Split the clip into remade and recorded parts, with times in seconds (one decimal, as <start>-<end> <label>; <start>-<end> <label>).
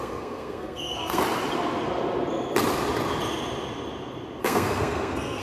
0.0-1.2 remade; 1.2-4.4 recorded; 4.4-5.4 remade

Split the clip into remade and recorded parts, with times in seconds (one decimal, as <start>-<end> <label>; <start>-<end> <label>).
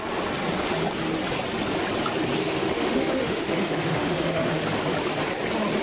0.0-2.4 recorded; 2.4-4.6 remade; 4.6-5.8 recorded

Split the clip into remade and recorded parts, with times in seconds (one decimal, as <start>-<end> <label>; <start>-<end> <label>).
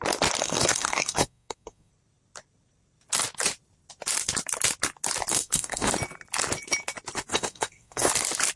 0.0-0.4 recorded; 0.4-1.9 remade; 1.9-5.3 recorded; 5.3-5.9 remade; 5.9-7.3 recorded; 7.3-8.1 remade; 8.1-8.6 recorded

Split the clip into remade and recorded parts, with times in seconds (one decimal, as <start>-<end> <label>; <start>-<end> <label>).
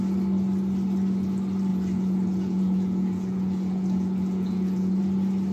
0.0-1.7 recorded; 1.7-5.0 remade; 5.0-5.5 recorded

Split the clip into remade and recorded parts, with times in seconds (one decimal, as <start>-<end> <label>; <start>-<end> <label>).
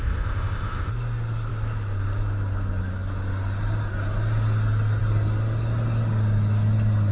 0.0-0.9 remade; 0.9-7.1 recorded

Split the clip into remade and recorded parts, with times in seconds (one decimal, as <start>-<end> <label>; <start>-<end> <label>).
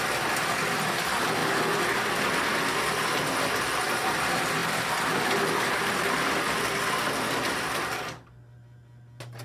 0.0-9.4 recorded